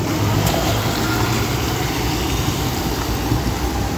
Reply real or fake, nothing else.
real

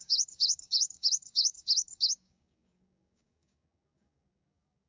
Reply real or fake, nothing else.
fake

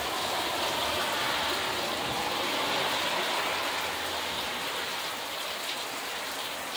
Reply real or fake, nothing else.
real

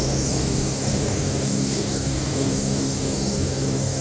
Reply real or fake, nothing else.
fake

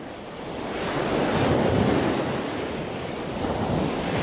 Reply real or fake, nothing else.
real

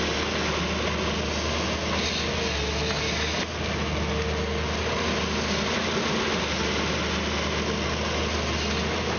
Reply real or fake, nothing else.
real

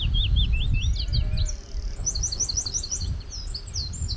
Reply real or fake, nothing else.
real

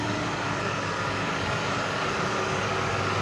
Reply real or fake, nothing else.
fake